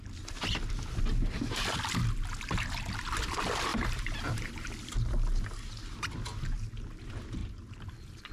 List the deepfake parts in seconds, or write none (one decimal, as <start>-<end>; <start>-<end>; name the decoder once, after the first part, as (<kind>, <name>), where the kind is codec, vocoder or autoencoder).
3.7-4.7 (vocoder, BigVGAN v2); 7.4-8.3